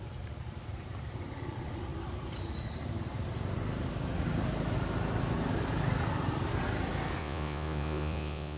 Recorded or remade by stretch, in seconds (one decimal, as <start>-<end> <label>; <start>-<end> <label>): 0.0-7.2 recorded; 7.2-8.6 remade